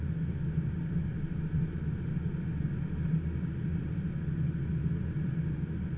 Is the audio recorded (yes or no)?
yes